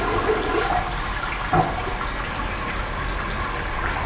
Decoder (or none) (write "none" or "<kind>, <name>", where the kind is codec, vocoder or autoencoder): none